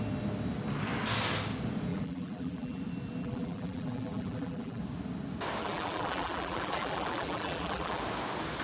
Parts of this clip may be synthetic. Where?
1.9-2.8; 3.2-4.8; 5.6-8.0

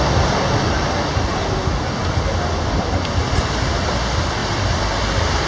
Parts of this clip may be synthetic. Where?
none